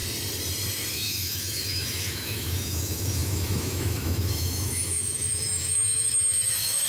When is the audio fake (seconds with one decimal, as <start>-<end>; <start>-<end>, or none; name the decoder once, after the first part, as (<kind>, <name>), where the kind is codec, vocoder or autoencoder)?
0.9-6.9 (autoencoder, DAC-VAE)